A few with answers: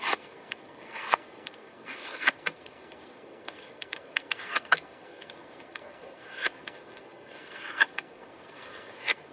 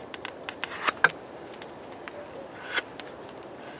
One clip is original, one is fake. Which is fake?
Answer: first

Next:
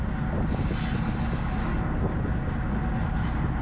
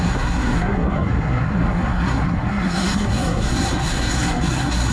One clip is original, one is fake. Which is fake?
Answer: second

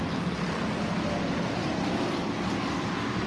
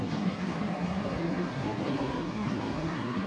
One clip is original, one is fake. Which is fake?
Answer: second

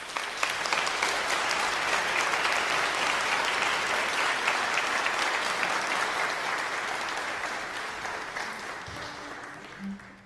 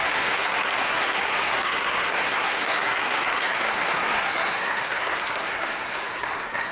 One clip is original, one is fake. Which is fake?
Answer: second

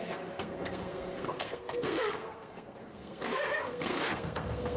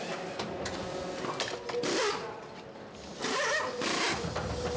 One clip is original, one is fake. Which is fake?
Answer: first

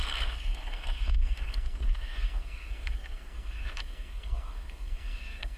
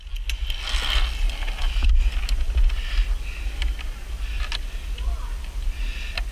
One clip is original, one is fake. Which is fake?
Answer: first